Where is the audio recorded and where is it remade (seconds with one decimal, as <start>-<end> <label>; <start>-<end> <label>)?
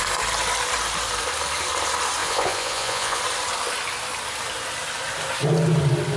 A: 0.0-2.2 recorded; 2.2-3.2 remade; 3.2-6.2 recorded